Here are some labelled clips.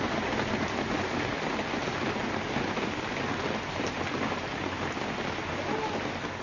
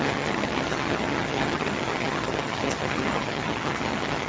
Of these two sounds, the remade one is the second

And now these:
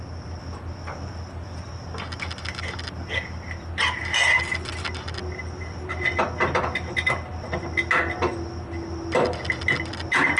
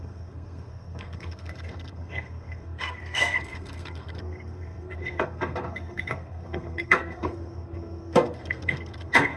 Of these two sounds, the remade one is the second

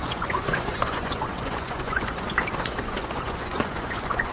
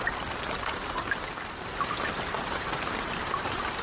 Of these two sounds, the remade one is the first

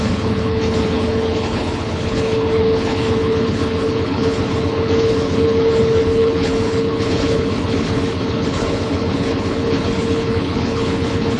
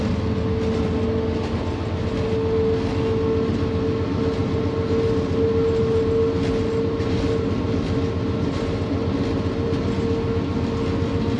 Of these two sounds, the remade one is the first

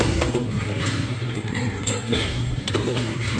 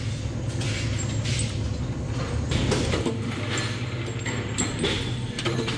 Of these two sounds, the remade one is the first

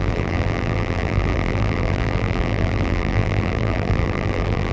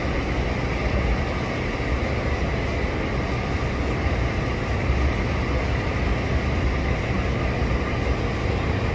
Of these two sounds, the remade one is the first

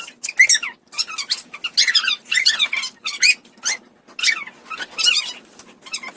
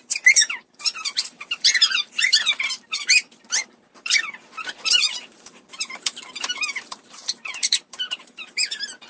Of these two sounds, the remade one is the second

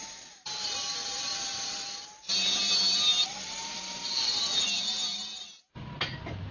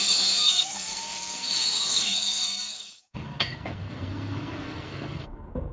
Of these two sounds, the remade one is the second